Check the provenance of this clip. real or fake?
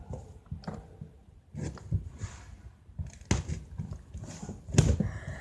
real